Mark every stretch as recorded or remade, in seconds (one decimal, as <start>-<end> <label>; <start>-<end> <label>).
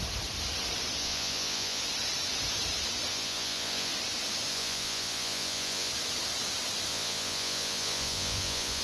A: 0.0-1.0 recorded; 1.0-1.8 remade; 1.8-3.1 recorded; 3.1-3.9 remade; 3.9-4.5 recorded; 4.5-5.9 remade; 5.9-6.9 recorded; 6.9-8.8 remade